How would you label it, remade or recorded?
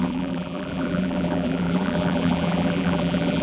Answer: remade